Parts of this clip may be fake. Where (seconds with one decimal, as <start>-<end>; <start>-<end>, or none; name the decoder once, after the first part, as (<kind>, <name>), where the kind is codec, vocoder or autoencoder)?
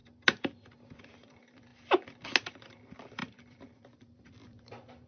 1.1-1.7 (vocoder, BigVGAN v2); 2.5-5.1